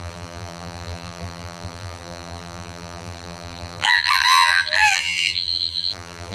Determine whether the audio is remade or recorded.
remade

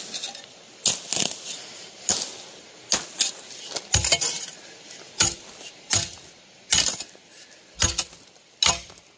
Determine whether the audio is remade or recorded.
recorded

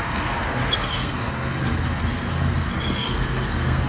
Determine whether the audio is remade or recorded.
remade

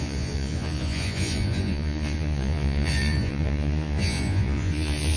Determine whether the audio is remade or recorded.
remade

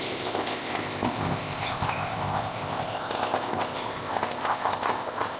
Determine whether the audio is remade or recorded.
remade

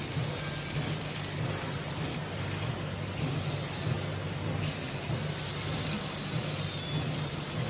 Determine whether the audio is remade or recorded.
recorded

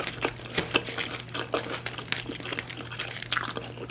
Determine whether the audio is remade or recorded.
recorded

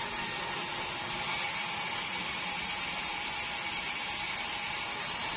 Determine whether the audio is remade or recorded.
recorded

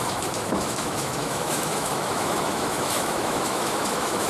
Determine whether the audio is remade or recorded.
remade